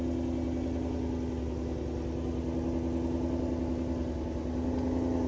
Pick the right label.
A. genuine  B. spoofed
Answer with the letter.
A